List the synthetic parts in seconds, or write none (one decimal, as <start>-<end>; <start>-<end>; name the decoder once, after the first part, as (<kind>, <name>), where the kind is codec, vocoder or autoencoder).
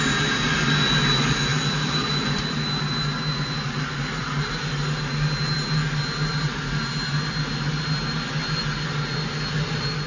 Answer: none